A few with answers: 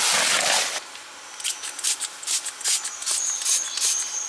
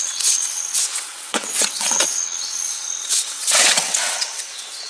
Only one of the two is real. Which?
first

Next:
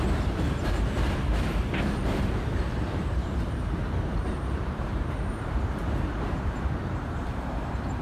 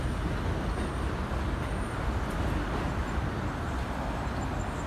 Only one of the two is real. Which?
second